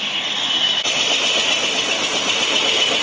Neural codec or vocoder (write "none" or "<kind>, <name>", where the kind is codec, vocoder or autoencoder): none